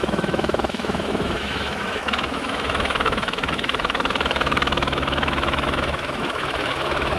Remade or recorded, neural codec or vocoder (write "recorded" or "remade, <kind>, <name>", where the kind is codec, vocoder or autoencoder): remade, autoencoder, DAC-VAE